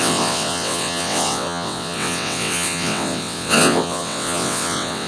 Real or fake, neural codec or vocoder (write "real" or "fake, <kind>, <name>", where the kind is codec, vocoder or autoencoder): fake, vocoder, WaveNeXt